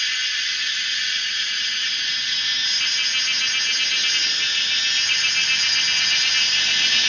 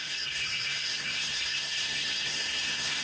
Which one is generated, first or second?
second